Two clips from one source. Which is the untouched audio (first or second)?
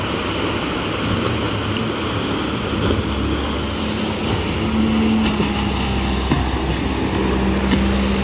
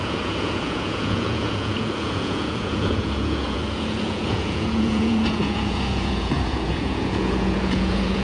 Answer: first